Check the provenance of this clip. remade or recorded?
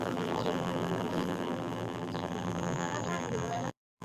remade